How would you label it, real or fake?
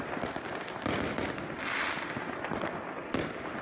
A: real